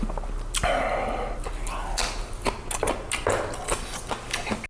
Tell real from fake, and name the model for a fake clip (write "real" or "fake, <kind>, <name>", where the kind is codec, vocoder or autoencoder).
real